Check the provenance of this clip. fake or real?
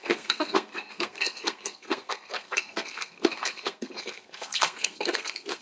fake